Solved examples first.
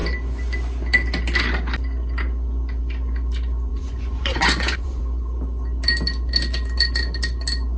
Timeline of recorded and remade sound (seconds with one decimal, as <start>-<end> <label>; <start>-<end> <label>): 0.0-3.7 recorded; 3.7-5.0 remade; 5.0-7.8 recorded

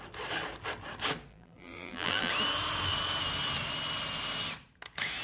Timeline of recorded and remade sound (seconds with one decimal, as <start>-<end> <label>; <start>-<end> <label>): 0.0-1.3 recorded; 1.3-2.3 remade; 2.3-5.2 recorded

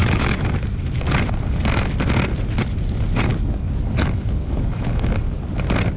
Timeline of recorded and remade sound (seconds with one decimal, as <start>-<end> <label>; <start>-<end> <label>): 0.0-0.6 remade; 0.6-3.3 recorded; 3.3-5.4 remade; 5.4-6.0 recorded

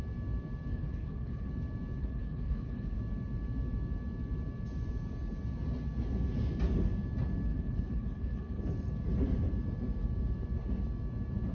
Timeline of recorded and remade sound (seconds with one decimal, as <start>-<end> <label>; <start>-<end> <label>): 0.0-0.7 recorded; 0.7-1.5 remade; 1.5-2.0 recorded; 2.0-3.0 remade; 3.0-7.5 recorded; 7.5-8.6 remade; 8.6-11.5 recorded

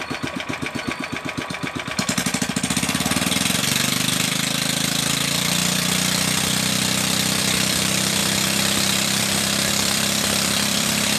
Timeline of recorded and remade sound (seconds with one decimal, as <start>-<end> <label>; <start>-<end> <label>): 0.0-11.2 remade